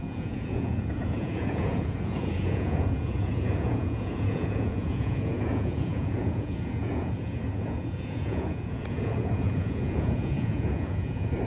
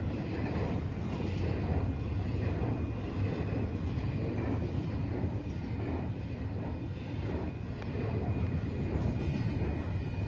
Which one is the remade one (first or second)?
first